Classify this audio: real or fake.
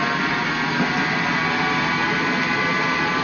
real